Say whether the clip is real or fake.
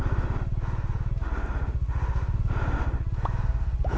real